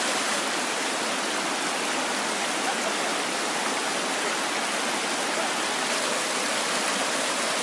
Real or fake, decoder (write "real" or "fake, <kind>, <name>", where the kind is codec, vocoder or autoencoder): real